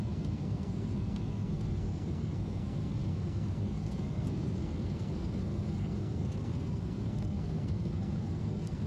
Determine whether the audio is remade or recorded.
remade